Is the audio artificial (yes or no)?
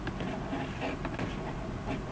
no